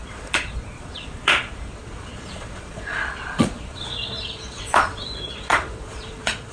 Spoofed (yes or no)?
yes